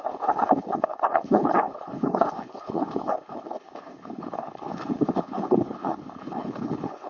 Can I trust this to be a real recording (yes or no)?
no